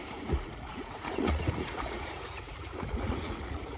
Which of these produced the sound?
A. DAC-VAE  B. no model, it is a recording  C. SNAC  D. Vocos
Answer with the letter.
D